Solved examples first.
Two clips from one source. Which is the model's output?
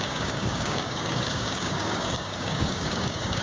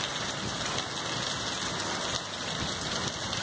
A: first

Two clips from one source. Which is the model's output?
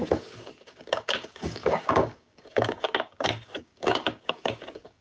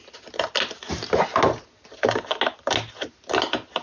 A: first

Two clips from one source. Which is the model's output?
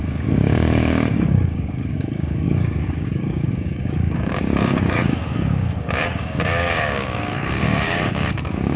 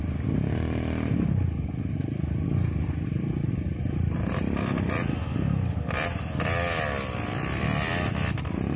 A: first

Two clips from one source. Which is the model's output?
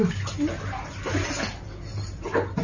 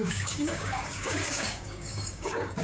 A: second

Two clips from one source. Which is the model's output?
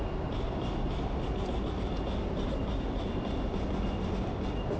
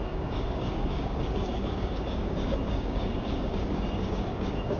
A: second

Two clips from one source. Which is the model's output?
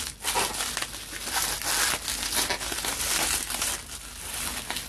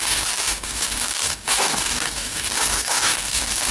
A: second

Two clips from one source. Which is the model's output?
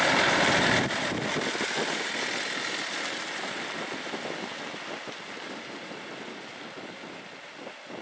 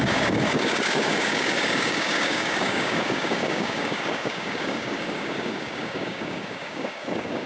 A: second